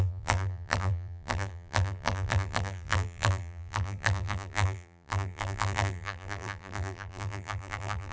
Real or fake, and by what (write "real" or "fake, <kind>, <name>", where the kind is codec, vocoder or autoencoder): fake, vocoder, BigVGAN v2